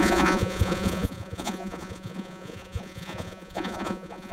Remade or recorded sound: remade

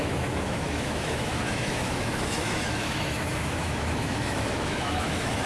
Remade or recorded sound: remade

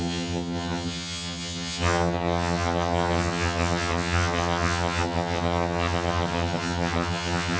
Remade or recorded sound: remade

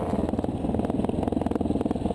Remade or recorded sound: recorded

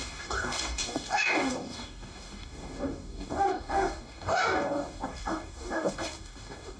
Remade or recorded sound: remade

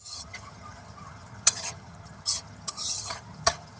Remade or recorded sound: remade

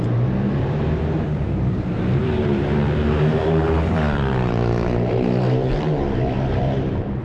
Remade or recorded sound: remade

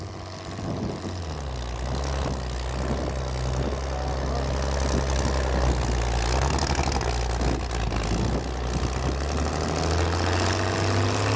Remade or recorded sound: recorded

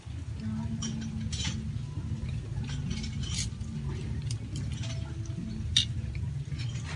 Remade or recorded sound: recorded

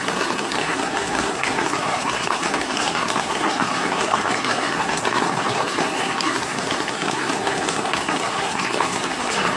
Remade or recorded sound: remade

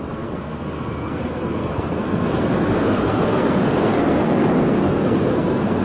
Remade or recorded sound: remade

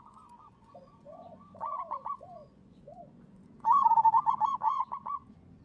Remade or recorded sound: remade